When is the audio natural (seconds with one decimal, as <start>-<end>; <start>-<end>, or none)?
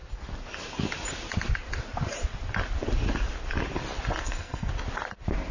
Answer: 0.0-4.2; 4.7-5.5